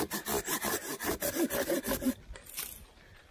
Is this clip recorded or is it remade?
recorded